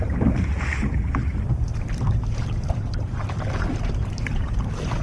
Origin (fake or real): fake